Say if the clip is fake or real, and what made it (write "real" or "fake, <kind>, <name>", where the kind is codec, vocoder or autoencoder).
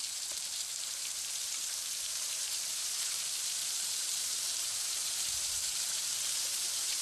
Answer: fake, vocoder, BigVGAN v2